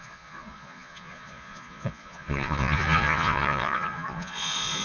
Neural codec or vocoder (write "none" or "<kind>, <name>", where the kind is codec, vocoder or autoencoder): vocoder, Vocos